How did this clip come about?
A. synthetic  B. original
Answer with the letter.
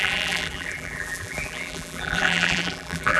A